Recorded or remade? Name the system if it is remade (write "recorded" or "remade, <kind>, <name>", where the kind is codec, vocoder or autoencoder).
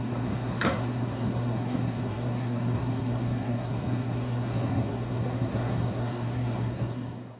remade, codec, SNAC